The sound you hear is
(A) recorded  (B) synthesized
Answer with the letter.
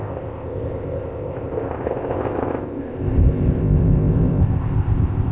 B